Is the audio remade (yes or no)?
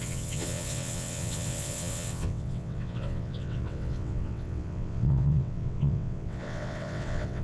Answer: yes